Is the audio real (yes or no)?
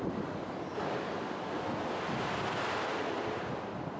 yes